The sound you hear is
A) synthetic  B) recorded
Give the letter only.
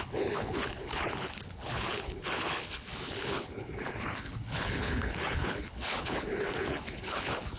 A